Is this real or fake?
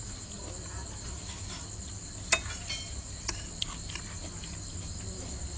real